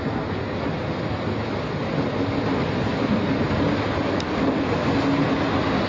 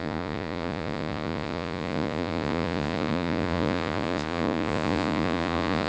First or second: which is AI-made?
second